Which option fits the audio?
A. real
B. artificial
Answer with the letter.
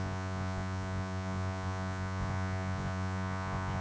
B